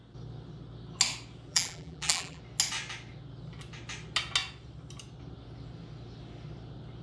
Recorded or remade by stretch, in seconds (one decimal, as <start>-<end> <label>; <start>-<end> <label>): 0.0-1.5 recorded; 1.5-2.4 remade; 2.4-7.0 recorded